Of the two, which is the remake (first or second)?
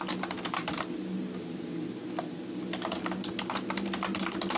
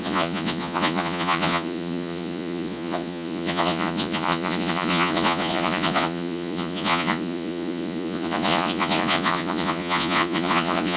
second